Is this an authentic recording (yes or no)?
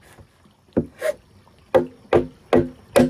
yes